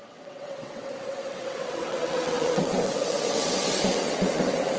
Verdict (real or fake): fake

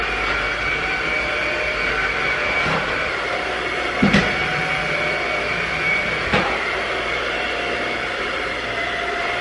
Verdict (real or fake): fake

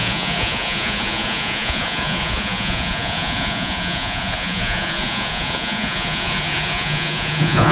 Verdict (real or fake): fake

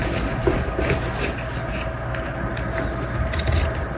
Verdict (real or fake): real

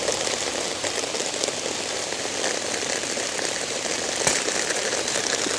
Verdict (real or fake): fake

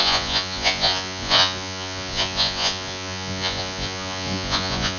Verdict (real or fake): fake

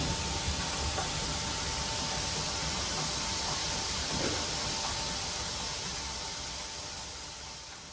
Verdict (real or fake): real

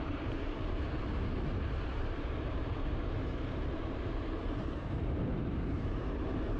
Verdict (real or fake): fake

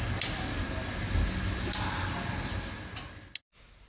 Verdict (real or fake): real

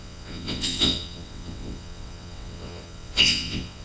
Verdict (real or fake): fake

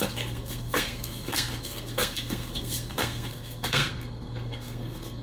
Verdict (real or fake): fake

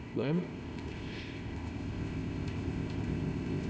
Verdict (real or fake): fake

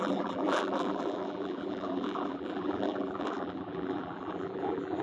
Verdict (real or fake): fake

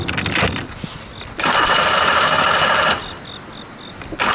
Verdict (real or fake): real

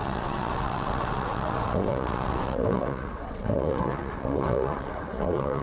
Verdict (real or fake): fake